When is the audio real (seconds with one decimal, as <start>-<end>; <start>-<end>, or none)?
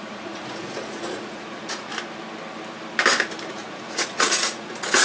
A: 1.9-3.5